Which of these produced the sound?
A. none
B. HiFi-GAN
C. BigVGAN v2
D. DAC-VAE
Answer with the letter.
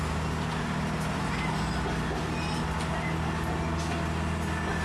A